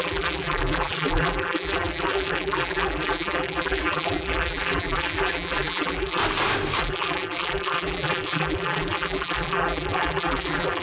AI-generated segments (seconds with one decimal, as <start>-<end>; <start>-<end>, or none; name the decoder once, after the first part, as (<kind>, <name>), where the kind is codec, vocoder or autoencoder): 0.0-6.2 (vocoder, BigVGAN v2); 6.8-10.8